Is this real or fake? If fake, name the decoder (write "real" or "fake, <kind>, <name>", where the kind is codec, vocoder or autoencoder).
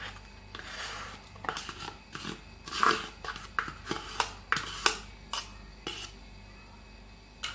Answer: real